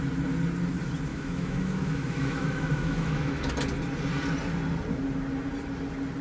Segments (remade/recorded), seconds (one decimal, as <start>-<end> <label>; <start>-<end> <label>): 0.0-1.1 recorded; 1.1-3.5 remade; 3.5-6.2 recorded

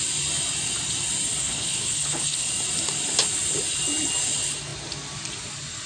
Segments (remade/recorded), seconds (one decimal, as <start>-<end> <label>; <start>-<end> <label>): 0.0-1.4 recorded; 1.4-2.5 remade; 2.5-5.9 recorded

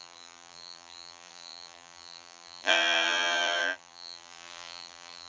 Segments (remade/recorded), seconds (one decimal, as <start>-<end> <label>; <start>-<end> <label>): 0.0-5.3 remade

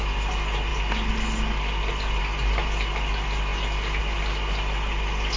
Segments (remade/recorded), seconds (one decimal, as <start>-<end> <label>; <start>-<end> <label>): 0.0-5.4 recorded

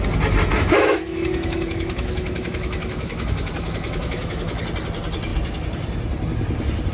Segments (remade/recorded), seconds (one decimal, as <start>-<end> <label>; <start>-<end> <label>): 0.0-0.5 recorded; 0.5-4.6 remade; 4.6-6.9 recorded

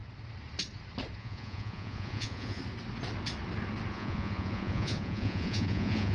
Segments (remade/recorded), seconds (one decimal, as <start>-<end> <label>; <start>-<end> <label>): 0.0-1.2 recorded; 1.2-2.6 remade; 2.6-3.9 recorded; 3.9-6.1 remade

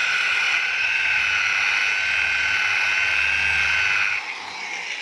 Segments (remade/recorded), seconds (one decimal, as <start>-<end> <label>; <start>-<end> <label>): 0.0-1.2 remade; 1.2-5.0 recorded

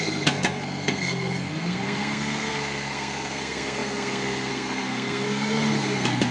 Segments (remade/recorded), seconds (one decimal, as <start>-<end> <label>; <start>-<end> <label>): 0.0-6.3 remade